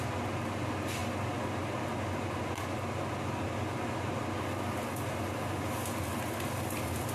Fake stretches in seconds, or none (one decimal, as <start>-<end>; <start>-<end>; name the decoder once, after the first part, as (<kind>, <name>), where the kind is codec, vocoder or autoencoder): none